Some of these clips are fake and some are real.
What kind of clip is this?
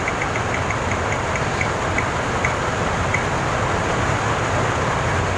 real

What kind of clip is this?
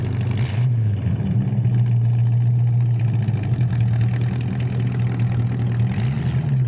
real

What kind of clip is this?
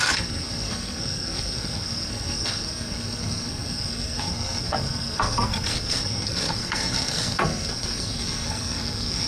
fake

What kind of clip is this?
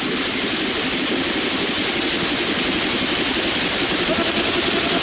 real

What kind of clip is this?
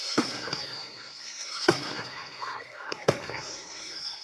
fake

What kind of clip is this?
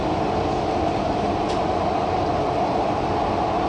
real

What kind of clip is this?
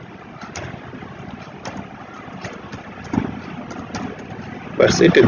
real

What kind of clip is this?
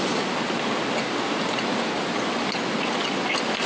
real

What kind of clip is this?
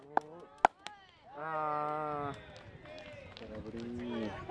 real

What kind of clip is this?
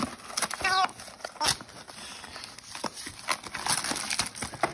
real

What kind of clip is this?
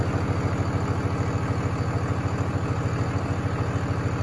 real